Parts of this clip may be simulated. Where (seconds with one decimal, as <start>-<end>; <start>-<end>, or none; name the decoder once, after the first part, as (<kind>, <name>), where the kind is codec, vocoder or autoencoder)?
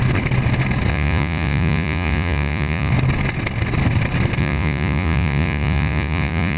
0.9-2.9 (vocoder, Vocos); 4.4-6.6